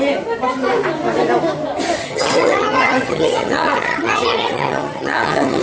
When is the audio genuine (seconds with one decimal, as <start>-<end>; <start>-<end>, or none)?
0.0-2.0